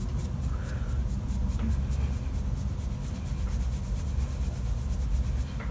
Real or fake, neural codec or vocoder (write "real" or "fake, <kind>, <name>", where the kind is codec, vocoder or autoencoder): real